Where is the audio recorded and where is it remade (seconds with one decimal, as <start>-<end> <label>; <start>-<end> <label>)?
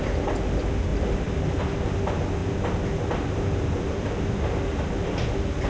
0.0-0.9 recorded; 0.9-1.6 remade; 1.6-5.7 recorded